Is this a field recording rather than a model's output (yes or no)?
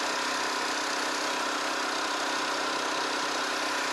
yes